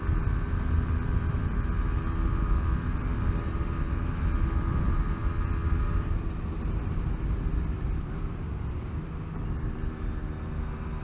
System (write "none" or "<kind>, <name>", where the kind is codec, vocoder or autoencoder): none